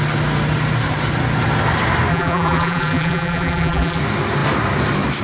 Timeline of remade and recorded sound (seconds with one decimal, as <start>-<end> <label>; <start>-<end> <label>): 0.0-2.1 recorded; 2.1-4.0 remade; 4.0-5.2 recorded